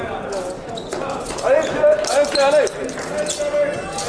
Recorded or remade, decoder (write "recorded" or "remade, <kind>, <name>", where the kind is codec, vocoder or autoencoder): recorded